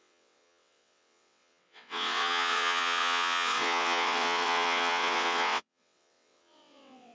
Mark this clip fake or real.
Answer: fake